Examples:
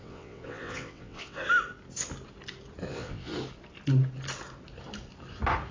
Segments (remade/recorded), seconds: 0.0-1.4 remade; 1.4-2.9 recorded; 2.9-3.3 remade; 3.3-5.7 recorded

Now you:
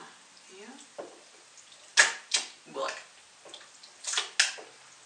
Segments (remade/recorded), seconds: 0.0-5.1 recorded

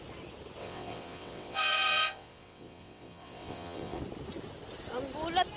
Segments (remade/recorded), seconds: 0.0-0.6 recorded; 0.6-4.0 remade; 4.0-5.6 recorded

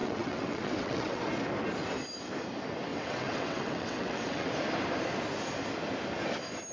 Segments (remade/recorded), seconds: 0.0-1.2 remade; 1.2-2.9 recorded; 2.9-4.5 remade; 4.5-6.7 recorded